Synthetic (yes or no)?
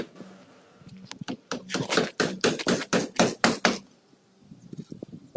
no